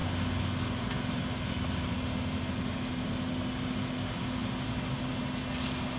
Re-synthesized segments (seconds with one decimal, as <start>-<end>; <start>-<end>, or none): none